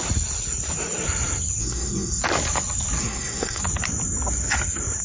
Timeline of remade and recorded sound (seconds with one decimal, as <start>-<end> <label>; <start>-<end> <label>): 0.0-1.6 recorded; 1.6-2.2 remade; 2.2-3.0 recorded; 3.0-3.6 remade; 3.6-5.0 recorded